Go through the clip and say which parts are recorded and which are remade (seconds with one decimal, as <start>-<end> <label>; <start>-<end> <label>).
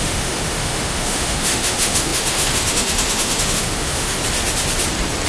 0.0-4.2 remade; 4.2-5.3 recorded